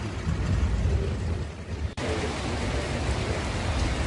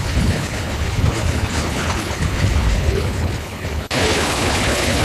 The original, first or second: first